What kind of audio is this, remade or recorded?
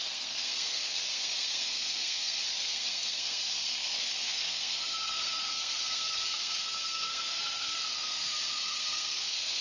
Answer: remade